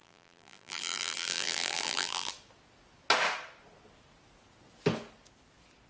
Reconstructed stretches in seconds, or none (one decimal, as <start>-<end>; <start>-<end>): 0.0-2.3